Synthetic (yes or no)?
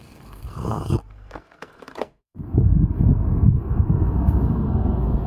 yes